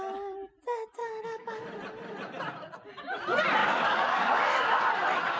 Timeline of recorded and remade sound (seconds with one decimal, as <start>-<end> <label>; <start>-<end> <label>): 0.0-1.0 recorded; 1.0-1.6 remade; 1.6-3.6 recorded; 3.6-4.8 remade; 4.8-5.4 recorded